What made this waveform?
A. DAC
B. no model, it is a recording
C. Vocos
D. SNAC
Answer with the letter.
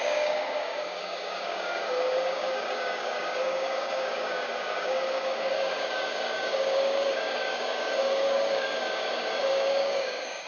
A